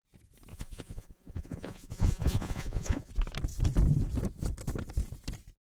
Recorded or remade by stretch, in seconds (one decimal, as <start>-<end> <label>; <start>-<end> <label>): 0.0-0.5 recorded; 0.5-3.1 remade; 3.1-5.8 recorded